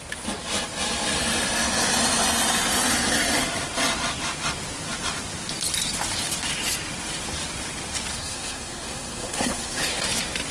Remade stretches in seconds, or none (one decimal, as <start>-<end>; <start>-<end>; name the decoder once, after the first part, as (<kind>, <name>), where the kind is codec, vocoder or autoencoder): 8.1-10.0 (codec, SNAC)